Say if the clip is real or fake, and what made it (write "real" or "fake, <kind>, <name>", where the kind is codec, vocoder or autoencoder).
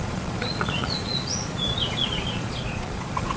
fake, vocoder, Vocos